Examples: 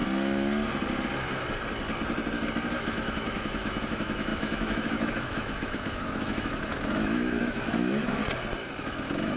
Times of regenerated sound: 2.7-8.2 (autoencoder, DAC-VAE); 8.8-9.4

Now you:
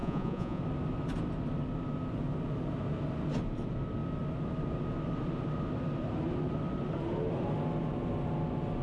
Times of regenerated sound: 0.0-0.6 (vocoder, Vocos)

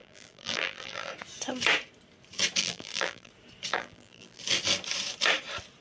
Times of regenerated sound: 0.0-1.1 (vocoder, BigVGAN v2); 2.6-3.3; 3.7-4.4

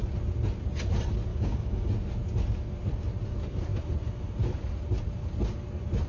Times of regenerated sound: 1.3-1.9 (codec, DAC)